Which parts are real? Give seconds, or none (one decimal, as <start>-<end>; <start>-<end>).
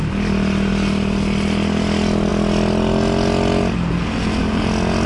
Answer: 0.0-5.1